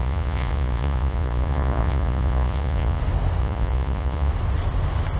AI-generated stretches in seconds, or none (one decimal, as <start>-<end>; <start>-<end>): 0.0-3.0; 3.4-4.3